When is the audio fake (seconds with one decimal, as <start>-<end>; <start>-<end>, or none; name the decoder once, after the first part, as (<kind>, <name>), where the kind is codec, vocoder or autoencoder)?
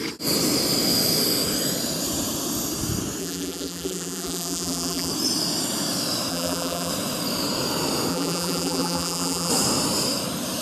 3.2-5.1 (vocoder, BigVGAN v2); 6.3-6.9; 8.1-9.5